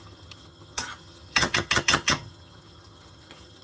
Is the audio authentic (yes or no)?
no